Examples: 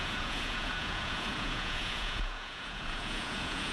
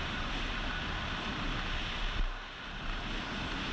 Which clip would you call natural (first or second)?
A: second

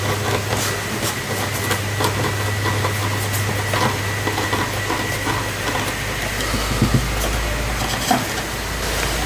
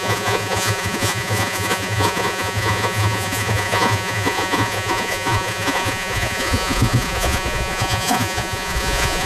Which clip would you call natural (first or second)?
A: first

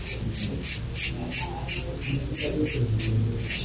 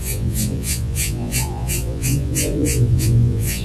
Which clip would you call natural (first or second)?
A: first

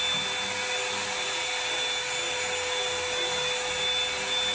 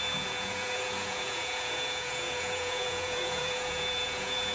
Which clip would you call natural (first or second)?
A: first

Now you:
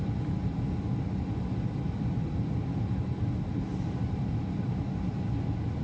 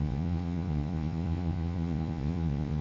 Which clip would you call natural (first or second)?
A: first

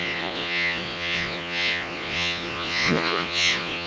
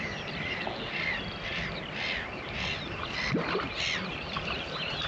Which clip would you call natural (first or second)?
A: second